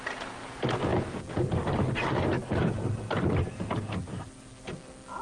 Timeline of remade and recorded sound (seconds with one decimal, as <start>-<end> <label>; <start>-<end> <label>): 0.0-5.2 recorded